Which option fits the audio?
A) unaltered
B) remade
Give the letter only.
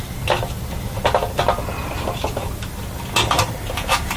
A